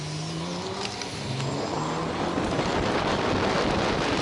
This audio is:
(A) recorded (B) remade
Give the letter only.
A